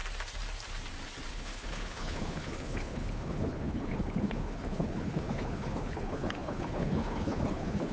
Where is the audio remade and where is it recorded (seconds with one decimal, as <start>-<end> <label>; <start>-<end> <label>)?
0.0-1.3 recorded; 1.3-7.9 remade